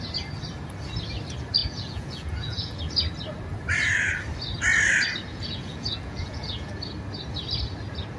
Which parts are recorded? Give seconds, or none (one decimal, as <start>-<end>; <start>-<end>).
0.0-1.6; 2.8-5.3; 6.7-8.2